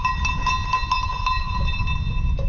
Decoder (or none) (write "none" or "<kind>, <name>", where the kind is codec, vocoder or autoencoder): none